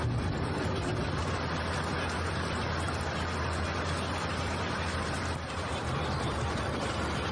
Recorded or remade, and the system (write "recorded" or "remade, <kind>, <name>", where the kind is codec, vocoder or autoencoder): remade, vocoder, BigVGAN v2